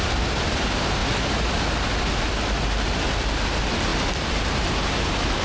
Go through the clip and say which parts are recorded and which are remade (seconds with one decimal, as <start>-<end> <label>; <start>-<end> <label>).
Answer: 0.0-5.4 recorded